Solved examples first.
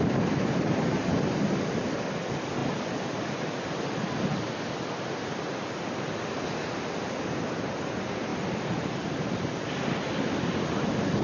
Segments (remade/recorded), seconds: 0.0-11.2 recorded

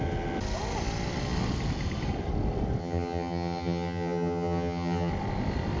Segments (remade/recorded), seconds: 0.0-2.8 recorded; 2.8-5.1 remade; 5.1-5.8 recorded